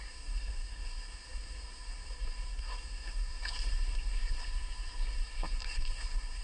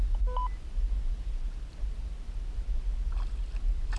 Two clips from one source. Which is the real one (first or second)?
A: second